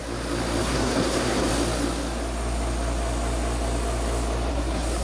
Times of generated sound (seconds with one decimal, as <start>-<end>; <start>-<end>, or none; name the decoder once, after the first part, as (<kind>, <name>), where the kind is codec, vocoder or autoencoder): 0.6-1.5 (codec, SNAC); 4.5-5.0